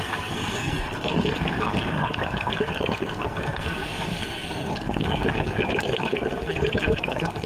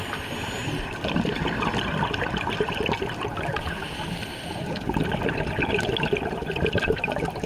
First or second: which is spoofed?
first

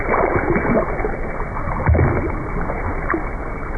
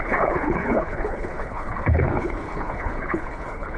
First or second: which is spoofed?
second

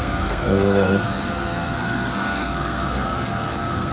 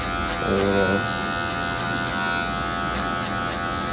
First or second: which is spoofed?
first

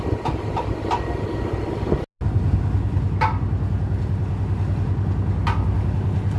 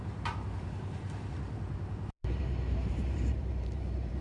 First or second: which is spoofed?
second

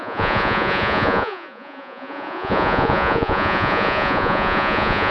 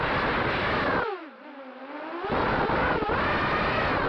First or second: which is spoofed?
first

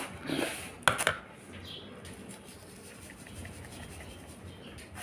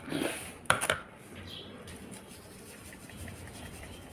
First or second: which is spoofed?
second